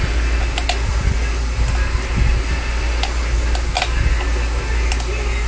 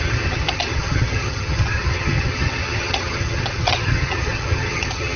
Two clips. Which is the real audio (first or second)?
first